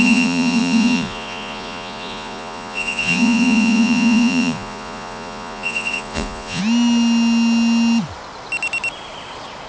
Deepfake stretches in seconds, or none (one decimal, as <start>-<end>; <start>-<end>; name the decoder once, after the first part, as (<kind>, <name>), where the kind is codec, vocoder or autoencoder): 0.0-6.6 (vocoder, Vocos)